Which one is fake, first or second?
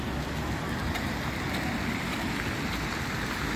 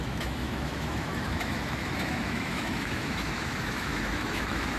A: second